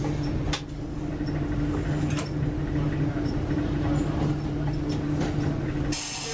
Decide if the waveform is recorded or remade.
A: recorded